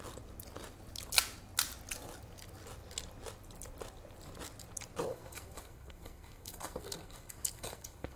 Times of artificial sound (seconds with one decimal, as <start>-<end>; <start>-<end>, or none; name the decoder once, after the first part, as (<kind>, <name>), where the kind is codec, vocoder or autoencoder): 5.1-8.2 (codec, SNAC)